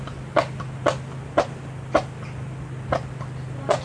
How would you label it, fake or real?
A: fake